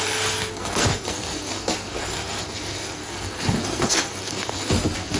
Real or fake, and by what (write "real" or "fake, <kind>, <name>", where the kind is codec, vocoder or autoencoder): fake, codec, SNAC